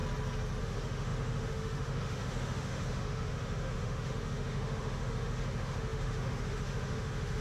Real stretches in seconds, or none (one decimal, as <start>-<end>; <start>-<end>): 0.0-0.6